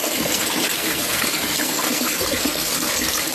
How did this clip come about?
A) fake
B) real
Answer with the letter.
A